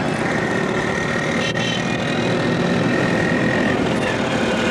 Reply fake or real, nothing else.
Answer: real